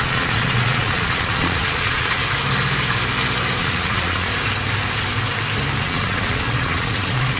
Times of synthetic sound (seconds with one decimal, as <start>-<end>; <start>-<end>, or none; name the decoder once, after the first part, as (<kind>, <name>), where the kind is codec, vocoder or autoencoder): 0.0-2.2 (vocoder, Vocos); 3.6-4.3; 5.8-7.4